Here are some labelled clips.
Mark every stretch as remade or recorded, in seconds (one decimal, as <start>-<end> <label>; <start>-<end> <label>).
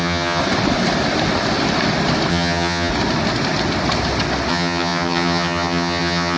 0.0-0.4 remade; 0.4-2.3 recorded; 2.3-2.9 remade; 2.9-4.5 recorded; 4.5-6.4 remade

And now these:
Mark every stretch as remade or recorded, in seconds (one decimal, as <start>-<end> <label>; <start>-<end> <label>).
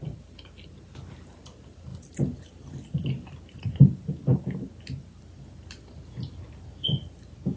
0.0-7.6 recorded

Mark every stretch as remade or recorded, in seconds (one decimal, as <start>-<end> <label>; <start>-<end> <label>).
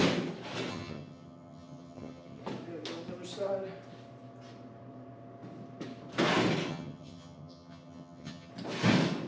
0.0-0.7 recorded; 0.7-2.4 remade; 2.4-6.7 recorded; 6.7-8.5 remade; 8.5-9.3 recorded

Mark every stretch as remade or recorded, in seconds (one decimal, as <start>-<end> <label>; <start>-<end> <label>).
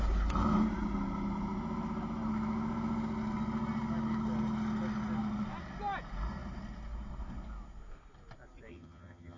0.0-8.7 recorded; 8.7-9.4 remade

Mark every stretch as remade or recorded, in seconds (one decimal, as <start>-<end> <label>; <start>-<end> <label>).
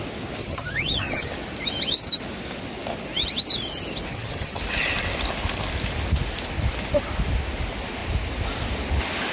0.0-0.4 recorded; 0.4-1.3 remade; 1.3-4.1 recorded; 4.1-4.6 remade; 4.6-9.3 recorded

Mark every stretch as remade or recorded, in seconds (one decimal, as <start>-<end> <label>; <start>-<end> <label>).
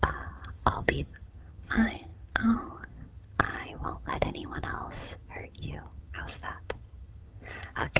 0.0-8.0 remade